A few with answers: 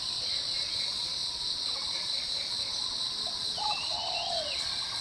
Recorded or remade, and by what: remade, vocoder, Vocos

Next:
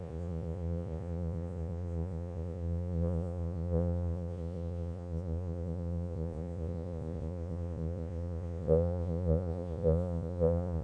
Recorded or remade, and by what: remade, vocoder, Vocos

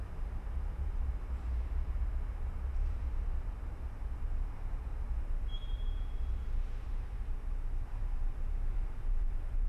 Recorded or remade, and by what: remade, vocoder, BigVGAN v2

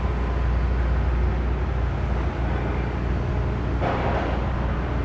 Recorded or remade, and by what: recorded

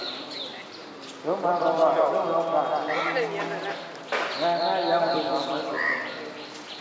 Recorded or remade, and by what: recorded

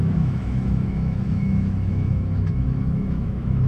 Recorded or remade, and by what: remade, autoencoder, DAC-VAE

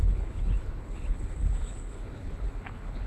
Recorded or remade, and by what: remade, codec, HILCodec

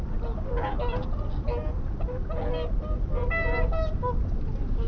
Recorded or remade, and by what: recorded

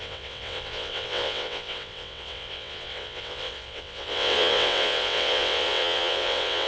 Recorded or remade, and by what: remade, vocoder, WaveNeXt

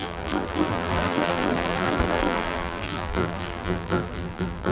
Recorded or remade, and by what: remade, vocoder, BigVGAN v2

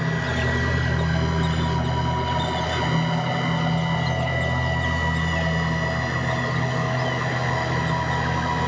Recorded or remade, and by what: recorded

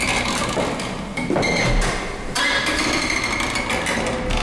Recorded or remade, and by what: recorded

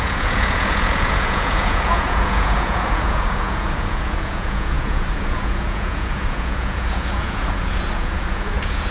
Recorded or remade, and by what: remade, vocoder, Vocos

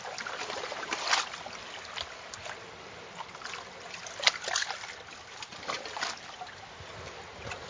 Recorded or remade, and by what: recorded